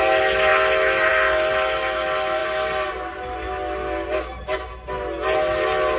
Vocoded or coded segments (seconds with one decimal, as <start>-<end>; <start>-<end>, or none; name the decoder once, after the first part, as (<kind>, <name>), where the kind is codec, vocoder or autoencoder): none